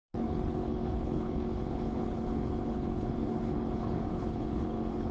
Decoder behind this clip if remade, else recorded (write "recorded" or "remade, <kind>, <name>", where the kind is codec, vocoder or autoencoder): remade, codec, HILCodec